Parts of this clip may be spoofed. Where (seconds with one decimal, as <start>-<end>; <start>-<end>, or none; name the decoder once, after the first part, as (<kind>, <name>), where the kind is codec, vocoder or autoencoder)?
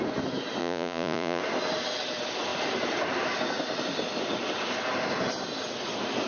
0.6-1.4 (vocoder, Vocos)